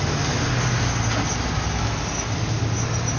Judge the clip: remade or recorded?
recorded